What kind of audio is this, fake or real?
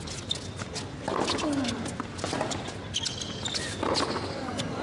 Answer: real